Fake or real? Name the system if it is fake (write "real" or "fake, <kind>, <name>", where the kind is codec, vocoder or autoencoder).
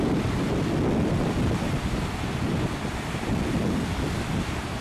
real